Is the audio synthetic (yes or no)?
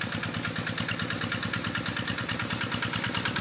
no